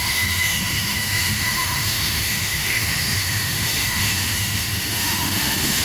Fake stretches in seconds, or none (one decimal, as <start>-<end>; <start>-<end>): 0.0-5.8